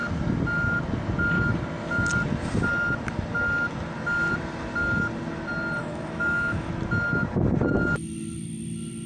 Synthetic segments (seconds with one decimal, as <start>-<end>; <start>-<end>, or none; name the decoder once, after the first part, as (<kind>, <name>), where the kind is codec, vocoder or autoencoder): 5.8-6.7 (autoencoder, DAC-VAE)